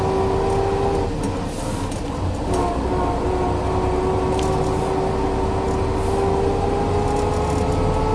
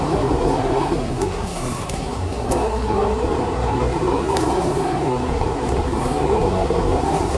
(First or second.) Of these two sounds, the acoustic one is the first